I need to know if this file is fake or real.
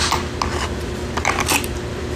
real